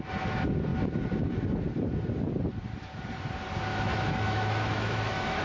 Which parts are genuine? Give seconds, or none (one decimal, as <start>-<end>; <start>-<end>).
0.0-3.7